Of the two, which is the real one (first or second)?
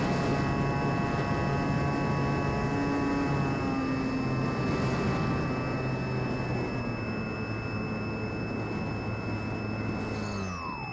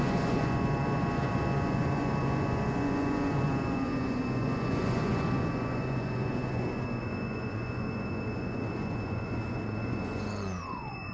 first